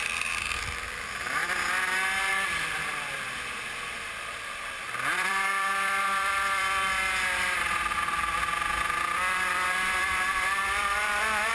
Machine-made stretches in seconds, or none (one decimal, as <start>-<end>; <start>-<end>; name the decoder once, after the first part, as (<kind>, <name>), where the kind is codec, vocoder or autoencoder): 0.0-1.4 (vocoder, BigVGAN v2); 2.3-11.5